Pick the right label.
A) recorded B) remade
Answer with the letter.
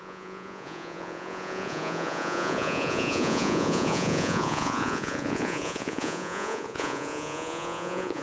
B